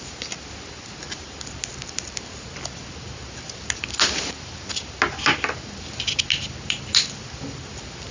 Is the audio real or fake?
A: real